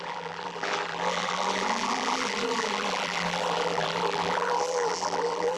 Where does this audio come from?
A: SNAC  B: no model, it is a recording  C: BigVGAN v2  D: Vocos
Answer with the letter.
C